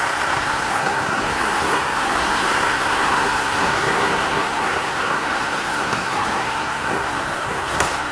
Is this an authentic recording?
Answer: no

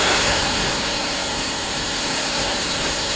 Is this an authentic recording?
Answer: no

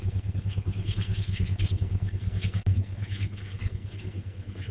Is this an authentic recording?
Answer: no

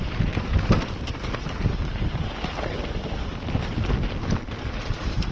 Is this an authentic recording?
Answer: yes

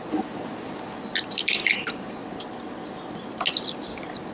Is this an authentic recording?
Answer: yes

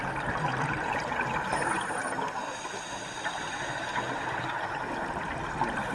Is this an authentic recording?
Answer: yes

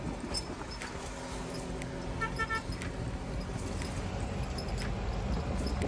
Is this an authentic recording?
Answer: yes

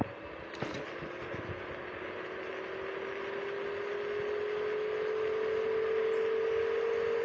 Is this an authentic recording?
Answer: yes